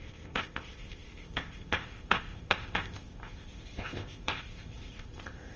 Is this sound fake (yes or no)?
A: yes